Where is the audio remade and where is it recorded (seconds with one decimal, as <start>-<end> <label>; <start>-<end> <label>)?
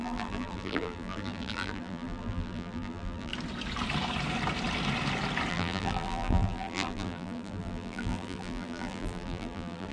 0.0-3.3 remade; 3.3-5.5 recorded; 5.5-9.9 remade